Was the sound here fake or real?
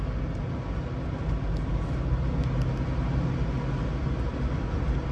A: real